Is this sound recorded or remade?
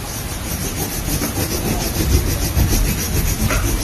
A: recorded